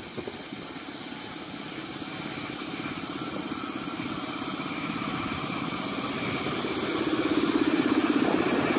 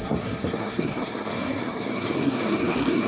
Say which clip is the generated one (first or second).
second